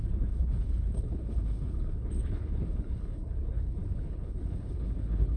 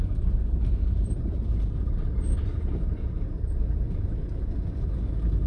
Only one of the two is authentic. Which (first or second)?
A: second